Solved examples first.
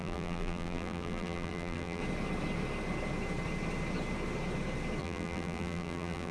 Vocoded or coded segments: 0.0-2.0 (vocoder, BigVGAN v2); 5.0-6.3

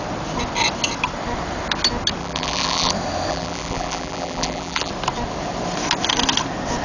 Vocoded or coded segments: 2.2-2.9 (vocoder, BigVGAN v2); 3.3-4.9